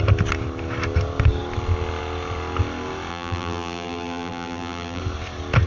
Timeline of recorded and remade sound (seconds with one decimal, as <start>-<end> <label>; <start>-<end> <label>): 0.0-3.1 recorded; 3.1-5.0 remade; 5.0-5.7 recorded